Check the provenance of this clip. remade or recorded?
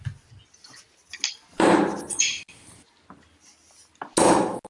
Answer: recorded